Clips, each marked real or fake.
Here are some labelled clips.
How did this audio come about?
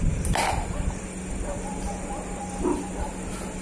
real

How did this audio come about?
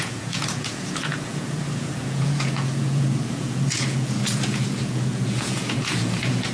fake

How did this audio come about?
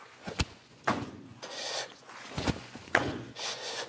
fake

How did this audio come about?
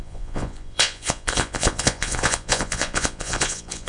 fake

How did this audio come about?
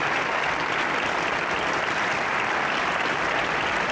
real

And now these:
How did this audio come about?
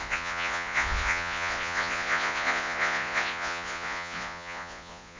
fake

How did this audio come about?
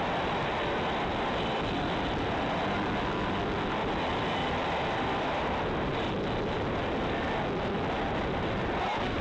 real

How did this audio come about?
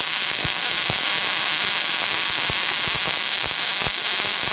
real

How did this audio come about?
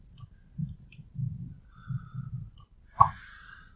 real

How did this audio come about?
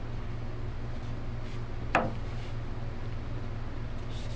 real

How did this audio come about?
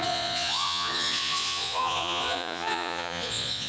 fake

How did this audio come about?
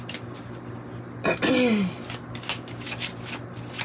real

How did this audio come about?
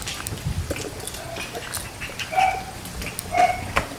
real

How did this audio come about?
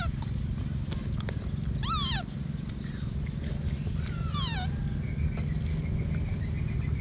real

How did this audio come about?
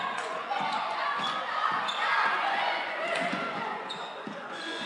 fake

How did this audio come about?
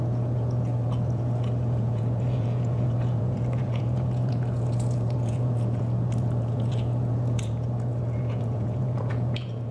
fake